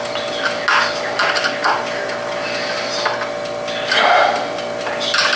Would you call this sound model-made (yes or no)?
no